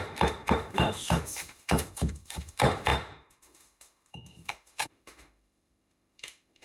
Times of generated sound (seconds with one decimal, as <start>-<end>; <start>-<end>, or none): 0.0-6.6